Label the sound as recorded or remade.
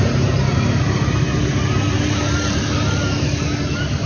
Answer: recorded